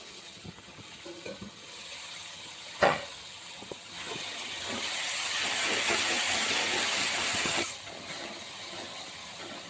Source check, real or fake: fake